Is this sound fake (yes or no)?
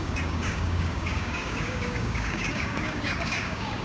yes